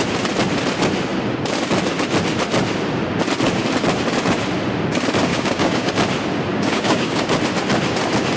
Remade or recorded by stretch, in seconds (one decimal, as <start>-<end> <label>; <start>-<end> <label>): 0.0-5.3 recorded; 5.3-5.9 remade; 5.9-6.5 recorded; 6.5-7.3 remade; 7.3-8.4 recorded